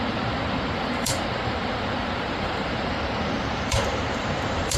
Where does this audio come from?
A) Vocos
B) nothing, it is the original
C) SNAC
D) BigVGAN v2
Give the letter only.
D